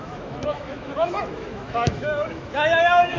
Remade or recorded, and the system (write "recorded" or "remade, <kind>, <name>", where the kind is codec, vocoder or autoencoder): remade, autoencoder, DAC-VAE